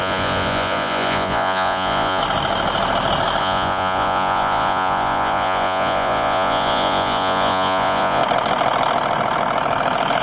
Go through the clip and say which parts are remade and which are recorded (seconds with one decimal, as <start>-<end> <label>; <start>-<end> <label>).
0.0-2.2 remade; 2.2-3.4 recorded; 3.4-8.2 remade; 8.2-10.2 recorded